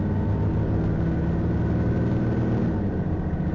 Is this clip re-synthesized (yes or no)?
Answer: no